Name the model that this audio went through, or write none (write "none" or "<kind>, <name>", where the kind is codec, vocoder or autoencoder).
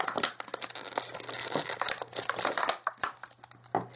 none